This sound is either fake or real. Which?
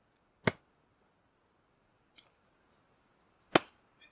real